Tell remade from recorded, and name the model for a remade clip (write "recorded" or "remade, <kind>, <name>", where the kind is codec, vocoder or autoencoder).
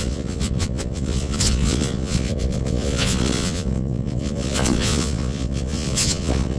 remade, vocoder, Vocos